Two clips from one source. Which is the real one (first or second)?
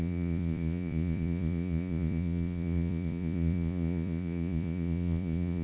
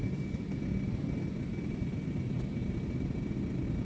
second